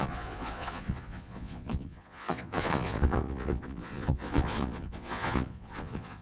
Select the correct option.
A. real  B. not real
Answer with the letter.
B